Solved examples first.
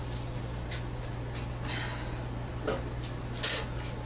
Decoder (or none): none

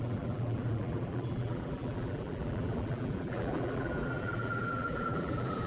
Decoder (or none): vocoder, BigVGAN v2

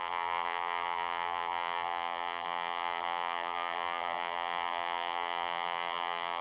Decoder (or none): vocoder, BigVGAN v2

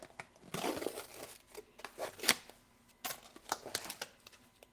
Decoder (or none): none